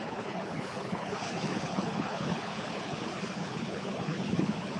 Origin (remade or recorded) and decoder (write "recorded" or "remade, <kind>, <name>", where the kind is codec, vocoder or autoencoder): remade, codec, HILCodec